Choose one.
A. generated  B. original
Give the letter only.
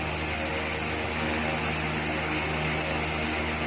B